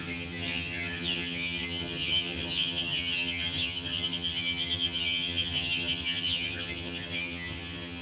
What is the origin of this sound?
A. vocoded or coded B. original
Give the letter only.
A